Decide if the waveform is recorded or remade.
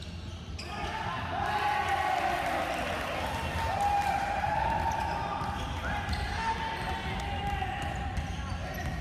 recorded